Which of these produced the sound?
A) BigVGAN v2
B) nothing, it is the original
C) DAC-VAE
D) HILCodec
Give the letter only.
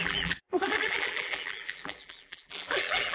A